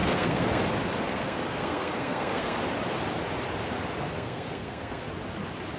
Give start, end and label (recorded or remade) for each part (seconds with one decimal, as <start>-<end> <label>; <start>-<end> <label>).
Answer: 0.0-0.6 remade; 0.6-1.1 recorded; 1.1-2.6 remade; 2.6-4.0 recorded; 4.0-5.1 remade; 5.1-5.8 recorded